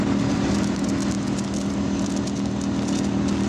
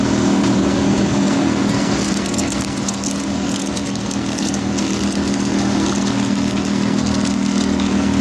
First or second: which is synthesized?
second